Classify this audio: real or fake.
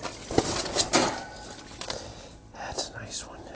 real